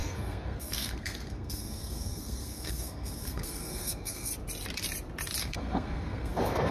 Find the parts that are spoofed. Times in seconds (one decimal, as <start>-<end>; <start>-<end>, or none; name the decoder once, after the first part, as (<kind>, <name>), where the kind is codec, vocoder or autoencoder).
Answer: 0.0-4.3 (codec, SNAC); 5.4-6.7